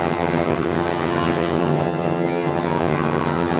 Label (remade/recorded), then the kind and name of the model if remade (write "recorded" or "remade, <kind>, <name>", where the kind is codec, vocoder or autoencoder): remade, vocoder, HiFi-GAN